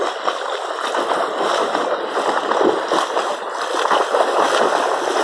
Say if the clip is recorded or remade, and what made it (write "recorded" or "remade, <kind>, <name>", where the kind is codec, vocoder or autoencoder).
recorded